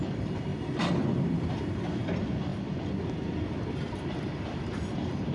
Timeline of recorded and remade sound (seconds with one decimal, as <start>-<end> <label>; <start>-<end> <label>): 0.0-5.3 recorded